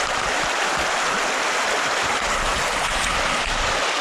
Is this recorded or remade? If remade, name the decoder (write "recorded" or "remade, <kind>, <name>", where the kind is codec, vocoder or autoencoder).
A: recorded